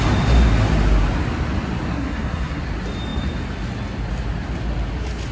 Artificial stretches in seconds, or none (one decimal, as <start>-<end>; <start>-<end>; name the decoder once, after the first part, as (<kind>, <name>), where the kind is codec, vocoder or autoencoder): 1.9-2.6 (codec, SNAC)